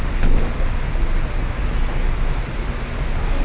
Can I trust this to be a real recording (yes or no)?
yes